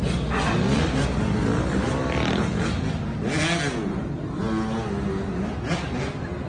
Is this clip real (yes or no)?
yes